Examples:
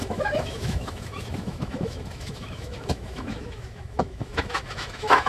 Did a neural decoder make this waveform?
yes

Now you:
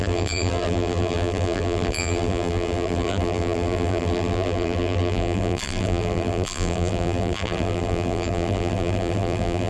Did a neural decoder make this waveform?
yes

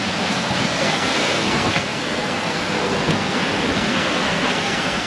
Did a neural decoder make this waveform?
yes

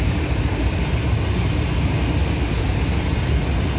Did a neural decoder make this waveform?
no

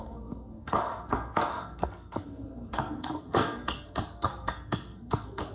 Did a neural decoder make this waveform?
yes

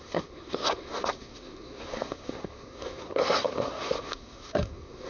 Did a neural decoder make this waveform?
yes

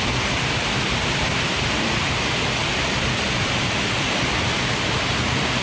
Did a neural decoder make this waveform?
yes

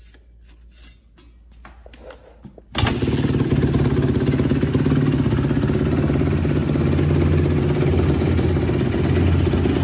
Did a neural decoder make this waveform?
no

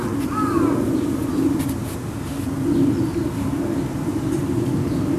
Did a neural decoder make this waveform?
no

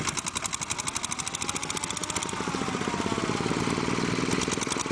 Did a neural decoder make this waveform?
no